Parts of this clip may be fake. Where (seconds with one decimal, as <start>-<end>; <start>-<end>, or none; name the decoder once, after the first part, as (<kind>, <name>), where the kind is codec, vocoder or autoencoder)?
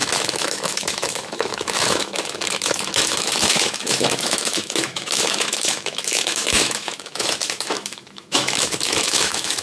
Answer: 0.0-9.6 (autoencoder, DAC-VAE)